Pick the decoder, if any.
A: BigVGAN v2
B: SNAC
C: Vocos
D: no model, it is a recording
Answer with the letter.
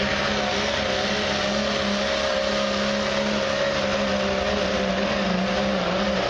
D